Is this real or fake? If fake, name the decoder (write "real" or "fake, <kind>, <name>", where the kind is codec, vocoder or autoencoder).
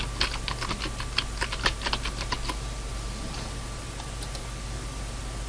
real